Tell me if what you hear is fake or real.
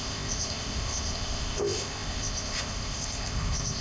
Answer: fake